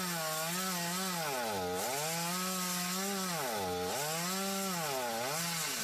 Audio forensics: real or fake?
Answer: real